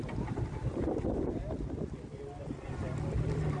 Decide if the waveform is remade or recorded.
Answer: recorded